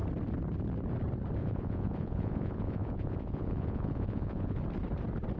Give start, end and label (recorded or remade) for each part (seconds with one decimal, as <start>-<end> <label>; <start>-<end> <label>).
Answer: 0.0-1.4 recorded; 1.4-4.6 remade; 4.6-5.4 recorded